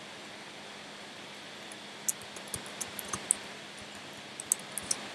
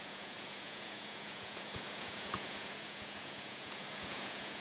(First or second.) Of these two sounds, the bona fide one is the first